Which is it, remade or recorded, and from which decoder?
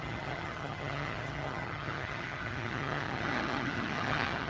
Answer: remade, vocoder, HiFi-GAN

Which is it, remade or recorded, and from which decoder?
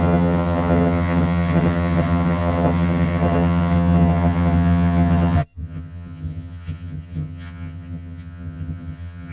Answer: remade, vocoder, HiFi-GAN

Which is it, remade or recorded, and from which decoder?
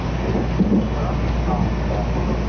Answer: recorded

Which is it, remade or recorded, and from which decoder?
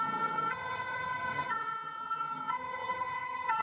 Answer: remade, vocoder, HiFi-GAN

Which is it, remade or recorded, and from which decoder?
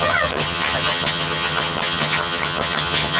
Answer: remade, vocoder, HiFi-GAN